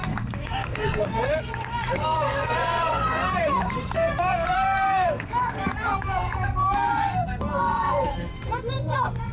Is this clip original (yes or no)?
no